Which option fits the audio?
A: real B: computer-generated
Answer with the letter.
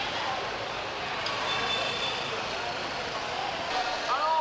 A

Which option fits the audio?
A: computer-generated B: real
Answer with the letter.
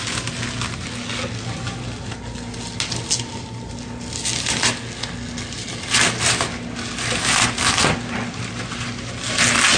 B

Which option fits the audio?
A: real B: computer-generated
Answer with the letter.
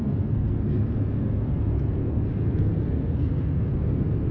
B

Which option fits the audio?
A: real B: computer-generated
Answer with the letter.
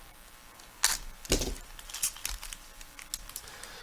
A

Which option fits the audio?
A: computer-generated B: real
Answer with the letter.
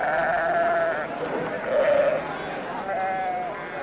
B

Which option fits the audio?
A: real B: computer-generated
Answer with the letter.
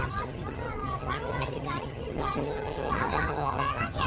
B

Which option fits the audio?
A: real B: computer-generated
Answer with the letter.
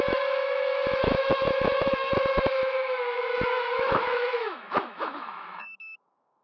B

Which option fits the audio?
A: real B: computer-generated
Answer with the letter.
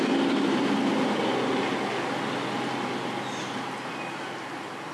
A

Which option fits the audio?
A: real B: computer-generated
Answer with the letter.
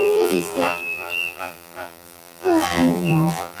B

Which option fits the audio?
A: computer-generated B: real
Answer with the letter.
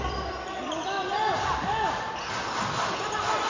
B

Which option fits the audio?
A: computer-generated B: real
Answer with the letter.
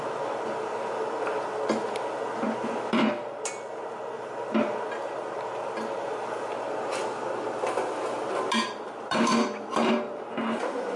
B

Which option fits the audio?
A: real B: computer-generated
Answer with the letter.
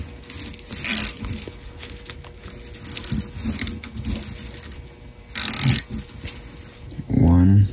A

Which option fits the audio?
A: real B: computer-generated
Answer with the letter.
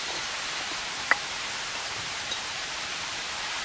B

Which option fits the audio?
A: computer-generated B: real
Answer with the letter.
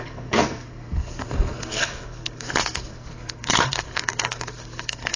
A